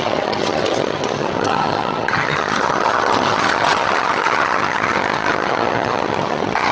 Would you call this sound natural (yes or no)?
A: no